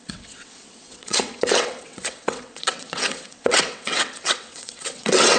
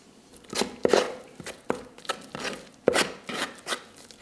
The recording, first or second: second